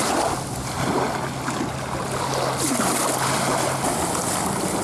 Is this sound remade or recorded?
recorded